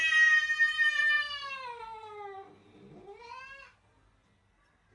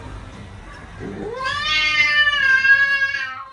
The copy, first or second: second